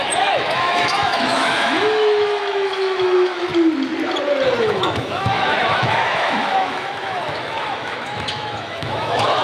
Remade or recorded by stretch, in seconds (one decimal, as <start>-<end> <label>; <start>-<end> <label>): 0.0-3.5 remade; 3.5-4.6 recorded; 4.6-9.4 remade